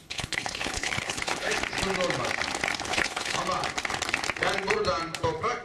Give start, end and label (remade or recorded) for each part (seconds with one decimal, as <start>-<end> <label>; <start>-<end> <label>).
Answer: 0.0-1.5 remade; 1.5-2.9 recorded; 2.9-3.4 remade; 3.4-5.6 recorded